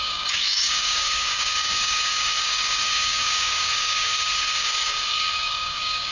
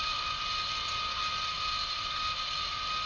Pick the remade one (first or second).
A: first